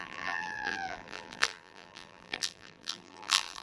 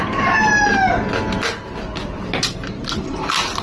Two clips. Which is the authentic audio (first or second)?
second